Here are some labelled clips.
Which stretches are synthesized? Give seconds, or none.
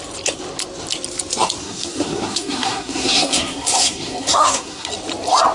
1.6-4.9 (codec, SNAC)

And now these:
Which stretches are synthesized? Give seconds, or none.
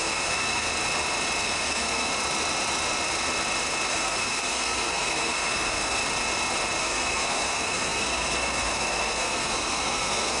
0.0-0.7 (codec, SNAC); 1.4-2.1; 3.9-6.0; 6.8-10.4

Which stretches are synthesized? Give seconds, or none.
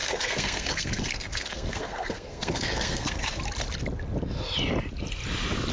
0.0-3.4 (codec, SNAC)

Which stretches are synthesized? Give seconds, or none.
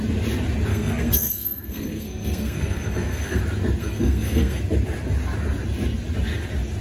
0.7-3.4 (codec, SNAC); 3.8-4.6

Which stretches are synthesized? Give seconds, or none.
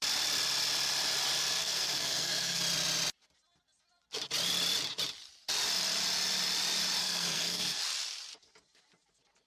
1.6-2.6 (codec, SNAC); 7.0-7.8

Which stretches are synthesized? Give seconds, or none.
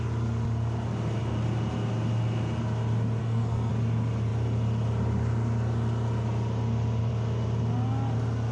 3.2-3.7 (codec, SNAC)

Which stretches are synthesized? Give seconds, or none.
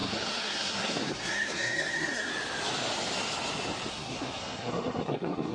0.0-2.3 (codec, SNAC); 3.9-5.5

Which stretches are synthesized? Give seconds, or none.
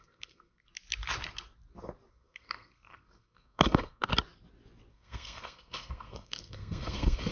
0.0-0.7 (codec, SNAC); 2.1-4.1; 4.9-7.3